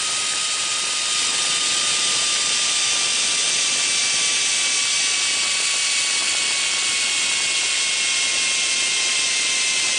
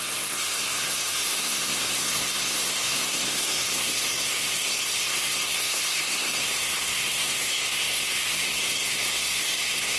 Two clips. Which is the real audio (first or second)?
first